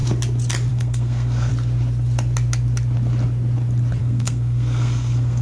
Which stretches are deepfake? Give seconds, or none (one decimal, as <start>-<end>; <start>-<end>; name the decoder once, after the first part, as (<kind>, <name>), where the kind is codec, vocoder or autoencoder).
0.7-1.5 (codec, SNAC); 4.0-5.4